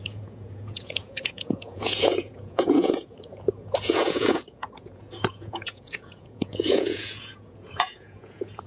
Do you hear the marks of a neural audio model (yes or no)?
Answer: yes